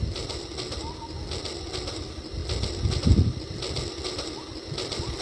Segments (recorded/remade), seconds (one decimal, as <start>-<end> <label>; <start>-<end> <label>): 0.0-5.2 recorded